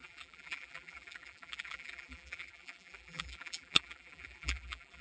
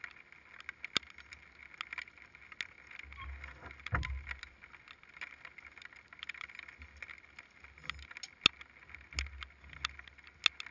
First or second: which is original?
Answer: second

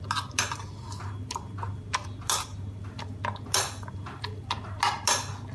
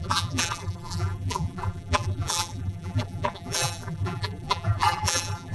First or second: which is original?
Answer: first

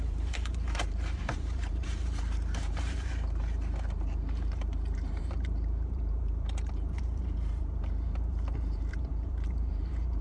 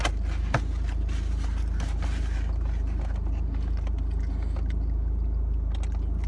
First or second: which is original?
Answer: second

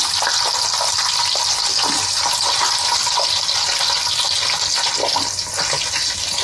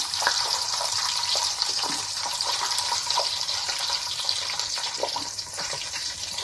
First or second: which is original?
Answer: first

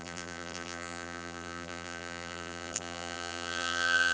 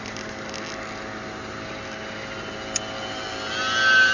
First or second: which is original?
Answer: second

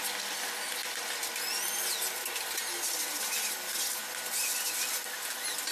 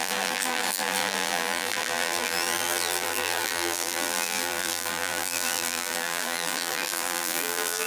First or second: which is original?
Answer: first